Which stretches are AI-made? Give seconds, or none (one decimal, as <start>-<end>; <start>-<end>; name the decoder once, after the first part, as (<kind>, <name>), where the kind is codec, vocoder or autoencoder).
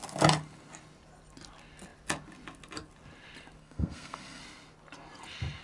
3.6-4.4 (codec, SNAC)